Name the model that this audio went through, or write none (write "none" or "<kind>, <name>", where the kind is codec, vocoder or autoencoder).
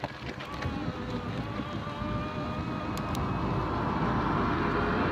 none